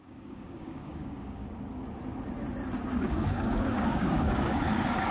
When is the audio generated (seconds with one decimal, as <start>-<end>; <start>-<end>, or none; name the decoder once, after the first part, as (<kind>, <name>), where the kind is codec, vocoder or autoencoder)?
0.0-1.4 (codec, DAC); 3.0-5.1